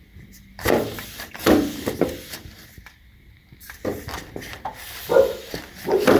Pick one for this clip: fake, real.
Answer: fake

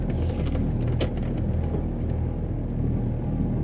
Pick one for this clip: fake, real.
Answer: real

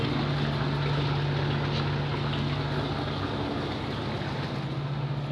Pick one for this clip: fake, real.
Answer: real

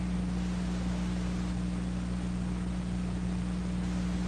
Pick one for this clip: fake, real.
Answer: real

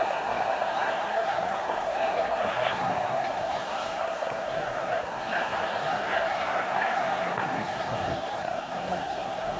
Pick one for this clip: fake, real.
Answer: fake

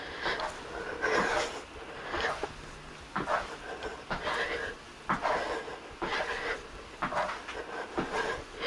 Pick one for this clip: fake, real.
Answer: real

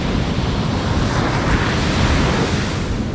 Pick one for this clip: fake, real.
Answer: real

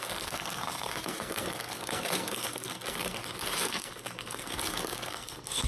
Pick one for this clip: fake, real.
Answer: fake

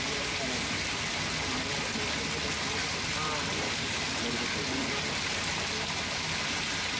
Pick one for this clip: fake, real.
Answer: real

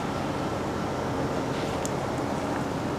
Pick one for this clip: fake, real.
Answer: real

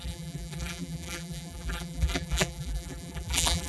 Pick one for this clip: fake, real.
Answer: fake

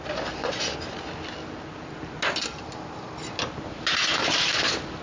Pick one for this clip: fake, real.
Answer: real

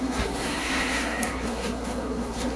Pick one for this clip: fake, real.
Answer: fake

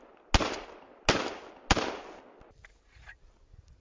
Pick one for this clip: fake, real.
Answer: real